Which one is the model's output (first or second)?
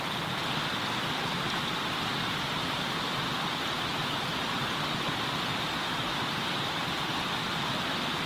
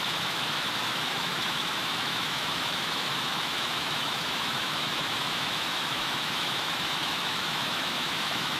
second